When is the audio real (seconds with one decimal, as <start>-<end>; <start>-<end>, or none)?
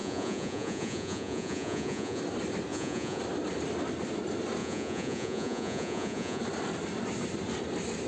2.2-2.7; 3.2-4.6; 6.4-8.1